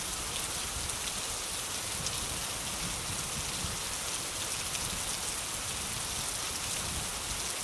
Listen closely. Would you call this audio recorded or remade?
recorded